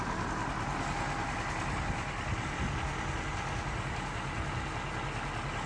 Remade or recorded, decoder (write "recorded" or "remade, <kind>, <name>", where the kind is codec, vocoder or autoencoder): recorded